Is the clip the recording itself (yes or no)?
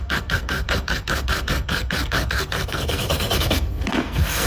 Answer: no